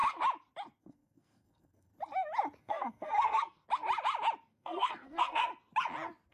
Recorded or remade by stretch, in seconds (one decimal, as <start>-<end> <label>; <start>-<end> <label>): 0.0-0.8 recorded; 0.8-1.9 remade; 1.9-2.6 recorded; 2.6-3.6 remade; 3.6-4.5 recorded; 4.5-5.5 remade; 5.5-6.3 recorded